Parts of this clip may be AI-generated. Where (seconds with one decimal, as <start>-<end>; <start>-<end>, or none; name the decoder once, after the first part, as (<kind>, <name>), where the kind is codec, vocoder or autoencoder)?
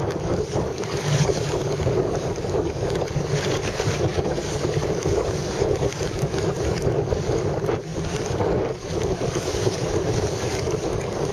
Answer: 0.0-11.3 (codec, DAC)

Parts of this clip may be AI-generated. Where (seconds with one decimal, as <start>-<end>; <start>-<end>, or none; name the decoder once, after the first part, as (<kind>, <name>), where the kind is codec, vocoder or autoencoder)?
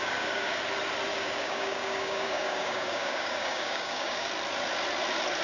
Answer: 0.0-0.6 (codec, DAC); 1.1-4.3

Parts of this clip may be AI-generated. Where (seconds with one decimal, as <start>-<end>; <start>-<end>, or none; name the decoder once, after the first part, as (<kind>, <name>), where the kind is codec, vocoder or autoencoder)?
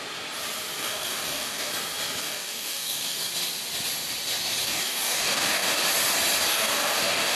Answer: 0.8-1.7 (codec, DAC); 2.2-3.3; 4.6-5.8; 6.5-7.4